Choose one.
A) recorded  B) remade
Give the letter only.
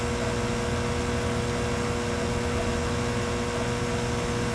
A